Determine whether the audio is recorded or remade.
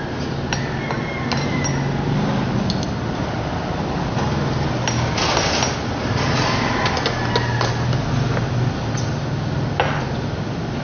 recorded